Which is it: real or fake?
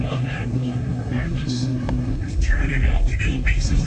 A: fake